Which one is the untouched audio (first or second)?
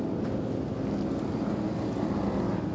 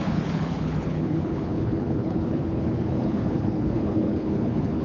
first